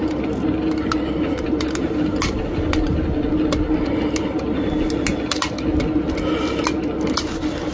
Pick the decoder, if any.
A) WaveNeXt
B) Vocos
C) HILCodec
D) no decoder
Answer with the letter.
D